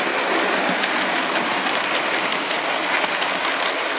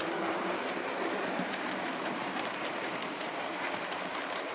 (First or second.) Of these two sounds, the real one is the first